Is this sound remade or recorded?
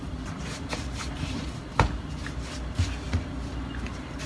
recorded